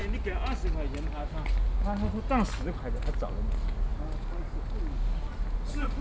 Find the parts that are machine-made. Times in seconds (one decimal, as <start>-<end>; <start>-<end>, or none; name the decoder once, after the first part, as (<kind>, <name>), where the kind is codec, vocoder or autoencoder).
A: none